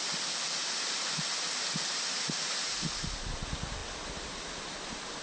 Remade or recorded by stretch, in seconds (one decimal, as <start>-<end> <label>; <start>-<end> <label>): 0.0-5.2 recorded